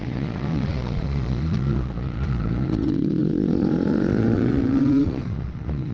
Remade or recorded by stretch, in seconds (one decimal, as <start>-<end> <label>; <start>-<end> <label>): 0.0-5.9 remade